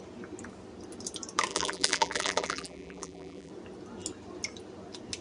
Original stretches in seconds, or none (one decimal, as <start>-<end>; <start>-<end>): 0.0-1.5; 3.5-5.2